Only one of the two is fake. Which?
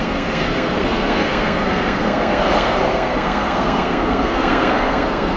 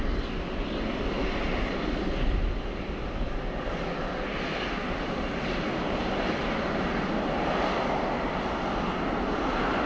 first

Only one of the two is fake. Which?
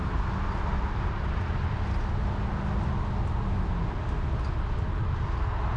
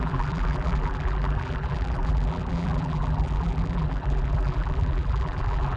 second